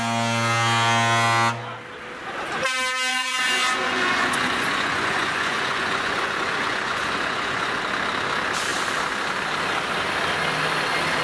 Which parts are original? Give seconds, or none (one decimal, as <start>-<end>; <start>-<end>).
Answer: 0.0-3.1; 7.8-11.2